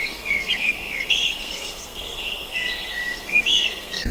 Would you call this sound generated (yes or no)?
yes